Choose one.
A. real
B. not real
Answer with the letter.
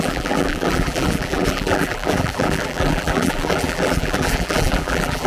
B